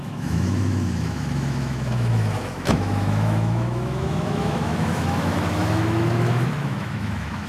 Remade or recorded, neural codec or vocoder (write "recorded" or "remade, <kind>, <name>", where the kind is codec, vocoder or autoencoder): remade, autoencoder, DAC-VAE